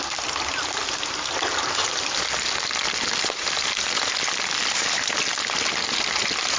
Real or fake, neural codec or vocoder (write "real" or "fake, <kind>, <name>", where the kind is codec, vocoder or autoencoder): real